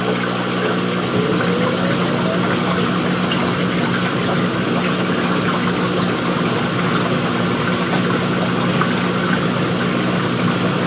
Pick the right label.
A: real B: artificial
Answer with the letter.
A